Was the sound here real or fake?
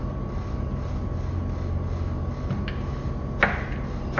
real